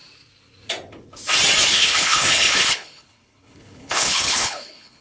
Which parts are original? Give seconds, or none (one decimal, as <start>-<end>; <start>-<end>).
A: 0.0-1.7